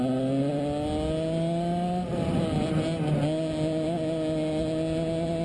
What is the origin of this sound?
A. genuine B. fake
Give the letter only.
A